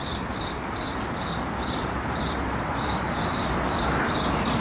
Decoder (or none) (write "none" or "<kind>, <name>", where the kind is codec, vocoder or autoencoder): none